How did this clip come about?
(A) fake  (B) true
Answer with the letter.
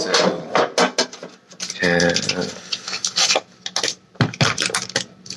B